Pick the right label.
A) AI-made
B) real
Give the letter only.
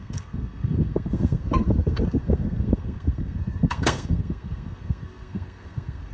A